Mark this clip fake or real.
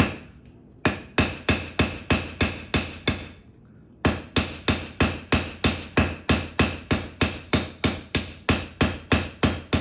real